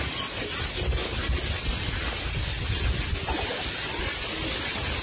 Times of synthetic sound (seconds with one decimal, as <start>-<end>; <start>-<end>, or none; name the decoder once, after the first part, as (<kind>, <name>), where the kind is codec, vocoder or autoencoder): none